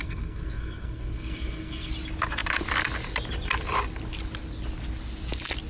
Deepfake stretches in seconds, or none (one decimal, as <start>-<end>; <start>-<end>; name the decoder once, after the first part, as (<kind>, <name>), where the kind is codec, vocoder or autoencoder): 0.0-1.9 (codec, SNAC)